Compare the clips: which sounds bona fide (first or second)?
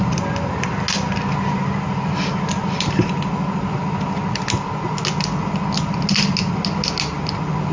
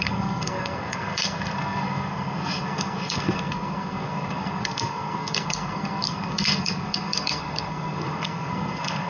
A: first